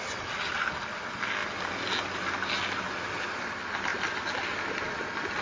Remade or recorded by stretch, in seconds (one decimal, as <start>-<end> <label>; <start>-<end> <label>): 0.0-5.4 recorded